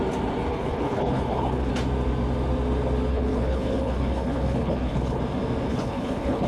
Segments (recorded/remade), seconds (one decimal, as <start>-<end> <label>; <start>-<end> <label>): 0.0-0.5 recorded; 0.5-1.7 remade; 1.7-3.1 recorded; 3.1-5.2 remade; 5.2-5.7 recorded; 5.7-6.5 remade